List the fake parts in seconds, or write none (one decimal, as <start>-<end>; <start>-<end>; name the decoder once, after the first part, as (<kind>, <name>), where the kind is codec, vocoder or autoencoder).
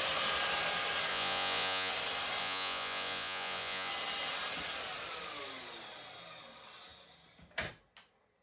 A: 1.1-1.9 (vocoder, Vocos); 2.4-3.9